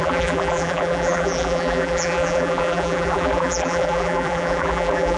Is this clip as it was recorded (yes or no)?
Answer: no